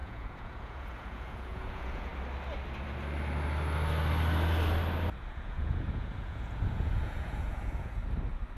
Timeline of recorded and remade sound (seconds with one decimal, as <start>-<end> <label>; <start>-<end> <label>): 0.0-2.1 remade; 2.1-5.3 recorded; 5.3-8.0 remade; 8.0-8.6 recorded